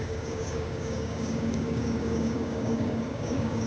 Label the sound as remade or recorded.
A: remade